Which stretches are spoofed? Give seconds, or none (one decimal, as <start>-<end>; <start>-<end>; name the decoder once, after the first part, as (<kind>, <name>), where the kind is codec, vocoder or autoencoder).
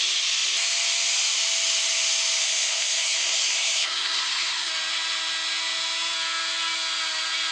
2.4-4.7 (codec, SNAC)